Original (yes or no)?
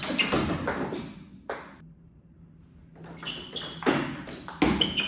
yes